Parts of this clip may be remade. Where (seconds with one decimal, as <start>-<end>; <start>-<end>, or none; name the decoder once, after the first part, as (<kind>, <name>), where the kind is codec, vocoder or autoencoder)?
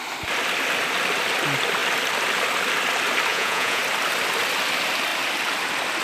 3.3-3.8 (vocoder, Vocos)